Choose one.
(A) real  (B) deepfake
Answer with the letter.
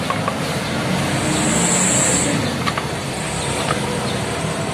A